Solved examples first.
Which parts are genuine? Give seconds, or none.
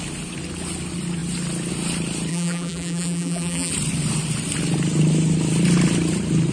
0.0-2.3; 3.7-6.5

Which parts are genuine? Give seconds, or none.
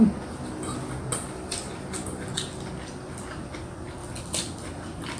0.0-5.2